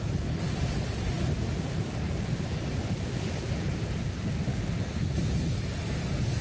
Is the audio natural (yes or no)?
yes